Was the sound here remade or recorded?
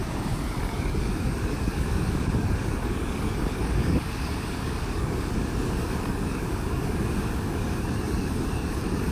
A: remade